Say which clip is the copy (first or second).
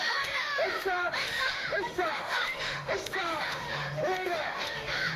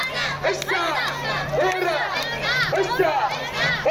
first